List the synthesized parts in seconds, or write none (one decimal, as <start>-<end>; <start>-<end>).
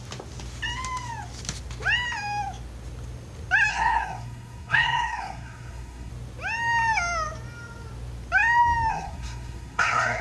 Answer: 3.7-6.1; 8.9-10.2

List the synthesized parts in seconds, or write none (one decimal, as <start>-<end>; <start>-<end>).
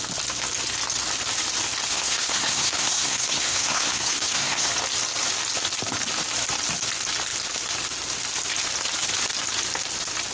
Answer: 1.9-4.7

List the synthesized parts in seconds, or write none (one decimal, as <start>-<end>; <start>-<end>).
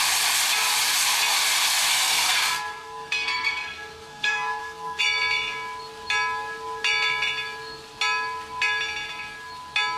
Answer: 1.9-5.0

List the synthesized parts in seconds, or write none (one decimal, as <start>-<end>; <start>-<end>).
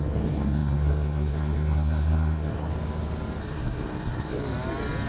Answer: 0.0-2.7; 3.4-4.4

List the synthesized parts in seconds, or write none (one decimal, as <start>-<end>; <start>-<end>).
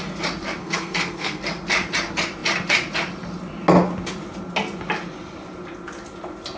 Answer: 0.6-1.4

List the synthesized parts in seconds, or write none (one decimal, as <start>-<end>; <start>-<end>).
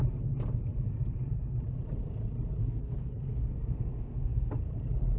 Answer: 2.6-4.5